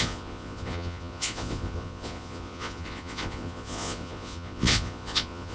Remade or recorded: remade